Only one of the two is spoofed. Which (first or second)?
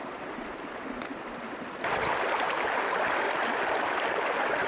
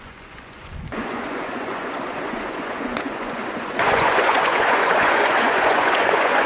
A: second